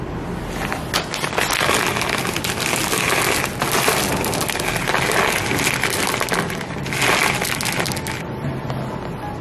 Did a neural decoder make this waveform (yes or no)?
no